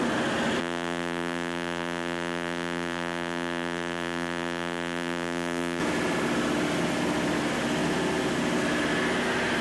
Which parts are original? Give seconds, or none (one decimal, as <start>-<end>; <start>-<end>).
0.0-0.6; 5.8-9.6